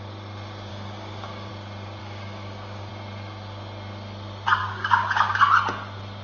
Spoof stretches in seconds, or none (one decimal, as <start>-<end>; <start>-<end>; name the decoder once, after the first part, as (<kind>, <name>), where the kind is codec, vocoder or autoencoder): 0.7-1.5 (codec, DAC); 2.0-2.9; 4.6-5.4